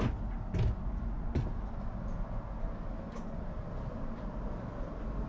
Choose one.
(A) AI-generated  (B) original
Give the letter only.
B